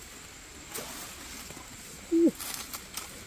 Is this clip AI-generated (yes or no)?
no